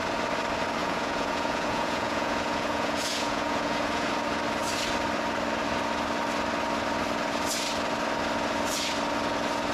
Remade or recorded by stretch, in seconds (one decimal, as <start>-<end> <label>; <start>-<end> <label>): 0.0-0.8 recorded; 0.8-4.1 remade; 4.1-9.7 recorded